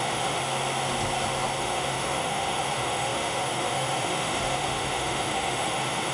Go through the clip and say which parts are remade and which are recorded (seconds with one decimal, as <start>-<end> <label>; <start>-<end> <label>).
0.0-0.4 remade; 0.4-1.6 recorded; 1.6-6.1 remade